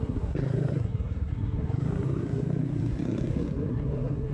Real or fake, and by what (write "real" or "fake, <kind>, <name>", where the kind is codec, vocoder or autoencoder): fake, codec, SNAC